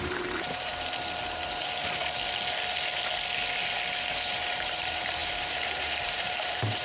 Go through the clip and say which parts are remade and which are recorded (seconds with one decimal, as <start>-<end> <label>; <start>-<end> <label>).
0.0-0.7 remade; 0.7-1.6 recorded; 1.6-2.0 remade; 2.0-4.4 recorded; 4.4-6.8 remade

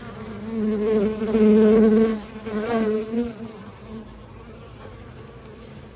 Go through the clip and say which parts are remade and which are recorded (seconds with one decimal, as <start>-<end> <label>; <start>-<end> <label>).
0.0-2.1 recorded; 2.1-5.1 remade; 5.1-6.0 recorded

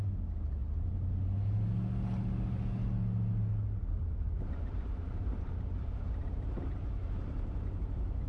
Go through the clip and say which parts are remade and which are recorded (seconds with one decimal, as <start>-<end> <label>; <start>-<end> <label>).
0.0-3.8 recorded; 3.8-7.9 remade; 7.9-8.3 recorded

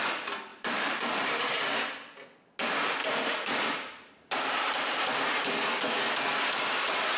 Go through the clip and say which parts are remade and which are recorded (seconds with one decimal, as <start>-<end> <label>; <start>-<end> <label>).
0.0-0.5 recorded; 0.5-1.4 remade; 1.4-3.0 recorded; 3.0-5.0 remade; 5.0-7.2 recorded